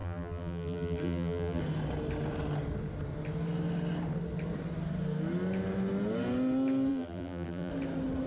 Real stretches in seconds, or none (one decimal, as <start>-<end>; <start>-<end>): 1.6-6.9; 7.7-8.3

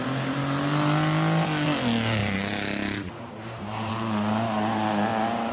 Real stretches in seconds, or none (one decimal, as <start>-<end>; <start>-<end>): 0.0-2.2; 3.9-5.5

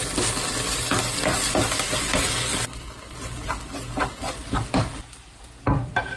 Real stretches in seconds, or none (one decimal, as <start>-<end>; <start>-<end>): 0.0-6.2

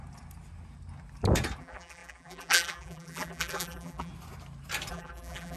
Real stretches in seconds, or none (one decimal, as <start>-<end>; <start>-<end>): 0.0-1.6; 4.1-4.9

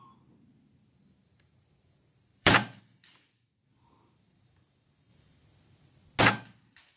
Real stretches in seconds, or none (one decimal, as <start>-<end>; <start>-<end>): 0.0-1.2; 2.8-7.0

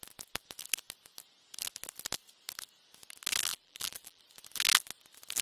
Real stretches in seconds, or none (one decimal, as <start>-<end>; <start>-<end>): 0.0-3.5; 4.2-5.4

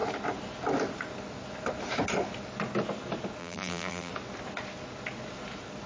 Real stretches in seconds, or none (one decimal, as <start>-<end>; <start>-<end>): 0.0-3.4; 4.1-5.9